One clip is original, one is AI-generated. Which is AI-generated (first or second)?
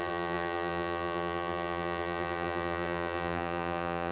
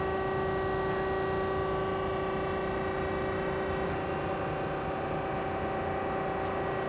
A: first